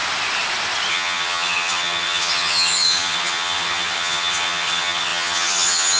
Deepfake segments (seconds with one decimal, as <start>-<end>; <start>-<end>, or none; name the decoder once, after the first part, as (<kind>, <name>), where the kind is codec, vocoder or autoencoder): 0.9-6.0 (vocoder, HiFi-GAN)